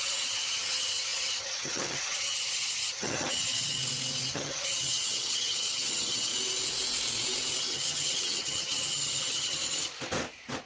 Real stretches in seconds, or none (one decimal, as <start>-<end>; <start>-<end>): 3.8-4.3; 6.3-7.6; 9.6-10.7

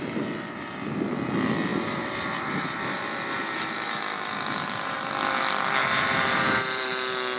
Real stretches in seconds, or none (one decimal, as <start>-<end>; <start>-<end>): 0.0-1.7; 5.1-5.8; 6.9-7.4

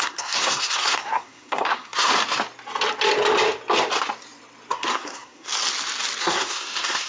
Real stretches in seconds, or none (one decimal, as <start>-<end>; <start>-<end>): 2.1-4.7; 5.5-6.2

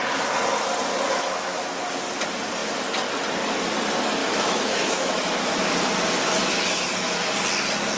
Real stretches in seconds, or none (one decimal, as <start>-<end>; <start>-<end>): 0.0-1.1; 1.6-4.2; 5.7-6.4; 7.2-8.0

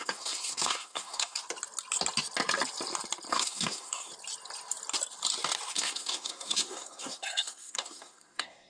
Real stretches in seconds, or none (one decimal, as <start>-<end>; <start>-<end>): 1.4-3.3; 4.1-5.7

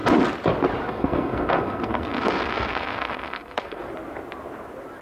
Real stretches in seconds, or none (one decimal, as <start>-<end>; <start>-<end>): 0.0-0.9; 3.8-5.0

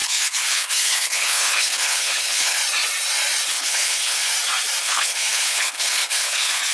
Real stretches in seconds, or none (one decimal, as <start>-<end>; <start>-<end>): 2.6-3.5; 4.3-4.8

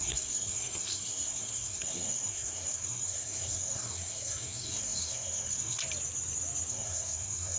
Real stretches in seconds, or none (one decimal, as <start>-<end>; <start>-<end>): 5.8-6.7